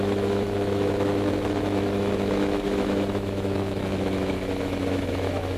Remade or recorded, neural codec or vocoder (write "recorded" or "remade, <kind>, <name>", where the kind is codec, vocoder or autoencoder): remade, autoencoder, DAC-VAE